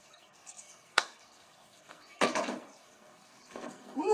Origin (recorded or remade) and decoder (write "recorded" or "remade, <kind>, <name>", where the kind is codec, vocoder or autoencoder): remade, codec, SNAC